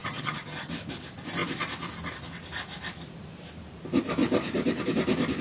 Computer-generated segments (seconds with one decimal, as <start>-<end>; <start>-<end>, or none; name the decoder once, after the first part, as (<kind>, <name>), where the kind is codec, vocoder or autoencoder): 0.0-0.7 (vocoder, HiFi-GAN)